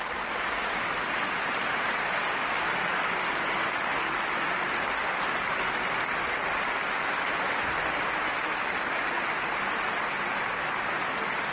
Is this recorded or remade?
recorded